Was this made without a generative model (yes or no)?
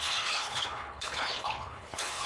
no